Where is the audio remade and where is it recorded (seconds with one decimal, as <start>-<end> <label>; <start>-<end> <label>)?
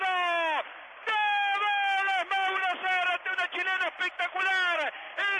0.0-5.4 recorded